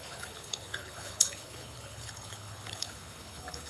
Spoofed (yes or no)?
yes